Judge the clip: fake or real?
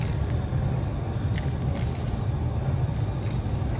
real